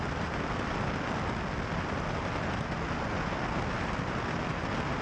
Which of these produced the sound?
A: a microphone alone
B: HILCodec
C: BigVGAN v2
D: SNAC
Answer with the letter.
A